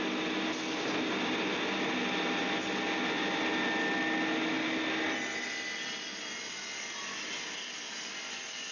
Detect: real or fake real